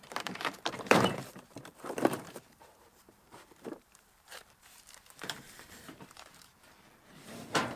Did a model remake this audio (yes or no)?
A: yes